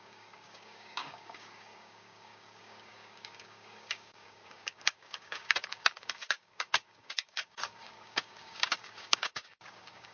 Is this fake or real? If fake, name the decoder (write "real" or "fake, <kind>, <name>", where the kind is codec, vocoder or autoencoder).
fake, codec, DAC